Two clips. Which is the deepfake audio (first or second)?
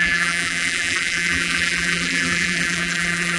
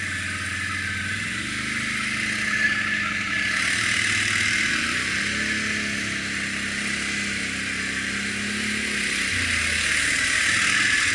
first